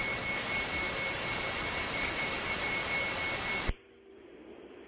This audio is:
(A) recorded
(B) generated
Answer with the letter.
A